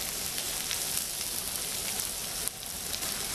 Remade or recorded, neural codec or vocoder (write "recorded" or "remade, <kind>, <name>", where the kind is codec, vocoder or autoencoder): recorded